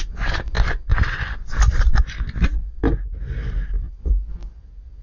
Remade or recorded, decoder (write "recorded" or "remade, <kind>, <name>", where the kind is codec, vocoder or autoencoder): recorded